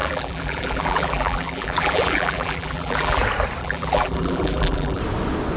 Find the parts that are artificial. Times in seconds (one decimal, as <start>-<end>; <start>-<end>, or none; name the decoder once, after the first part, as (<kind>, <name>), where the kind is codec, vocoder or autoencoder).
0.0-3.2 (vocoder, BigVGAN v2); 3.6-5.0